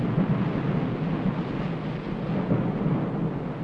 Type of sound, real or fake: real